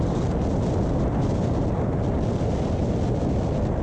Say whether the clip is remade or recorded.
recorded